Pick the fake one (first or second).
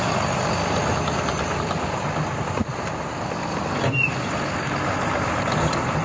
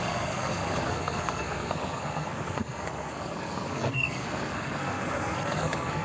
second